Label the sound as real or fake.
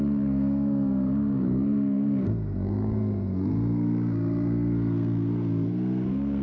fake